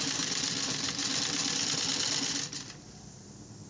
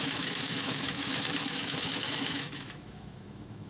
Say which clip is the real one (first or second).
first